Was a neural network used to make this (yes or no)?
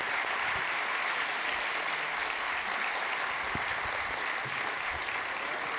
no